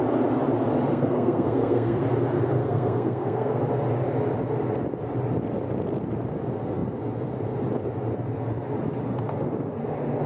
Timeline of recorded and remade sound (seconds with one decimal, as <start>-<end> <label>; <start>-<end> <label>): 0.0-0.9 recorded; 0.9-2.0 remade; 2.0-2.6 recorded; 2.6-3.6 remade; 3.6-10.3 recorded